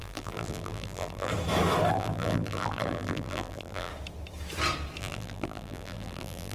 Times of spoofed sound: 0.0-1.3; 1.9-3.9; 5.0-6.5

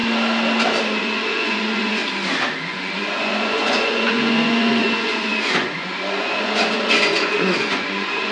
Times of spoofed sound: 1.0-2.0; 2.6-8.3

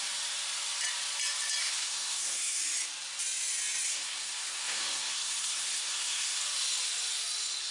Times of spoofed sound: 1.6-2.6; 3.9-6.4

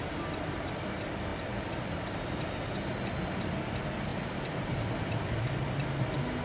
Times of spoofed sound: none

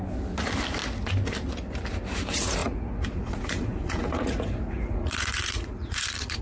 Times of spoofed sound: 2.6-6.4

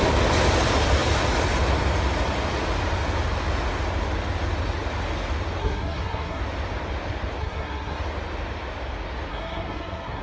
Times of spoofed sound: 5.6-6.4; 7.4-8.0; 9.3-10.2